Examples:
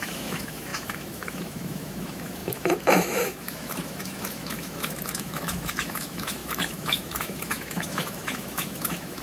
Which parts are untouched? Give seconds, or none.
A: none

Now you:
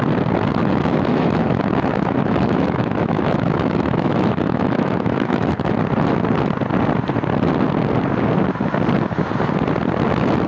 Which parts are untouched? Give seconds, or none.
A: 0.0-0.6; 5.7-10.5

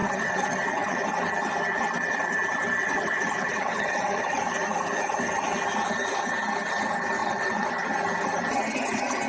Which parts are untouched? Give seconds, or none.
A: 1.0-2.8; 4.4-7.2; 7.7-9.3

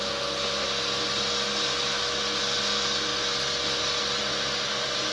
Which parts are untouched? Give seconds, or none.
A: 0.0-5.1